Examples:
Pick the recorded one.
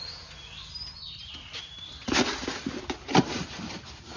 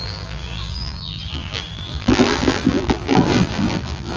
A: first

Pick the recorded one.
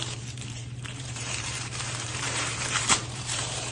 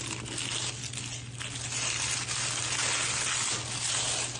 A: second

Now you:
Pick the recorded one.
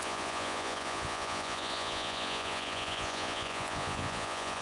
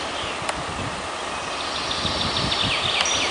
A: second